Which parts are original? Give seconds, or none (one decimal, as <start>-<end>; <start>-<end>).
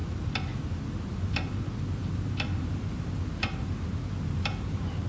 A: 0.0-5.1